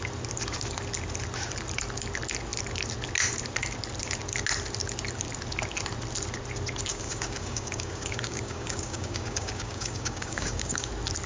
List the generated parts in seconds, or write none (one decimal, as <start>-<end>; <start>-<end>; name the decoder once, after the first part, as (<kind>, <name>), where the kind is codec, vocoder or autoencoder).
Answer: 6.9-10.9 (codec, DAC)